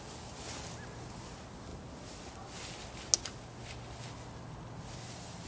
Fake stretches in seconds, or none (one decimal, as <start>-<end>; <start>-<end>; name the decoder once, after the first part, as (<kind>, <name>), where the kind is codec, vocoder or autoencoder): none